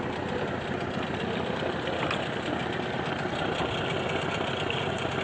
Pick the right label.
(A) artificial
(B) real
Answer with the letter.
B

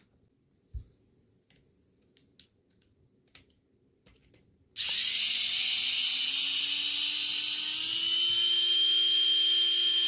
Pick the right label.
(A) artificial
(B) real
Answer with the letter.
B